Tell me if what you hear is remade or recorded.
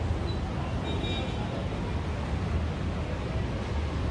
recorded